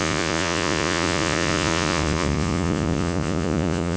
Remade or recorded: remade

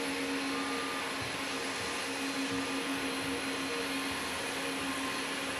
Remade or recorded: recorded